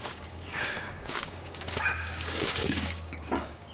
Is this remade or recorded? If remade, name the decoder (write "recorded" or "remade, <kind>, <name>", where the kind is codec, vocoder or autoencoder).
remade, codec, DAC